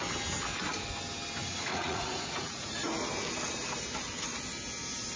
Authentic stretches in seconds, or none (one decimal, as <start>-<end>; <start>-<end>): 0.0-1.4; 2.9-5.2

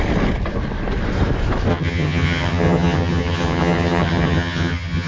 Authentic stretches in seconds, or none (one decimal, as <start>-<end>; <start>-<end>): 0.0-1.7